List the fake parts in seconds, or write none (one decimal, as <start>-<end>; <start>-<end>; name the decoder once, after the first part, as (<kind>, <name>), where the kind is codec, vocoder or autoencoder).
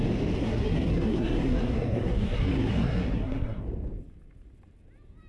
0.4-3.6 (codec, SNAC)